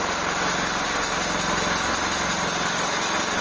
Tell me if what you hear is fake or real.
real